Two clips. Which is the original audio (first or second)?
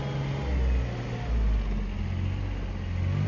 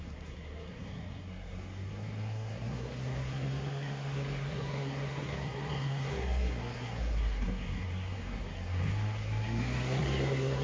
first